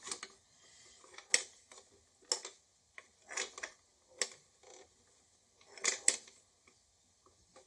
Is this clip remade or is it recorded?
recorded